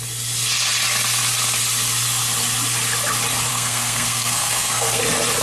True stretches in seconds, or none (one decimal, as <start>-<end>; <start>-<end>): 0.0-3.5; 5.0-5.4